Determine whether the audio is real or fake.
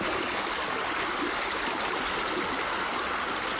real